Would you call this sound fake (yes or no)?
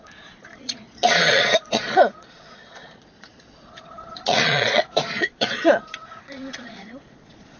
yes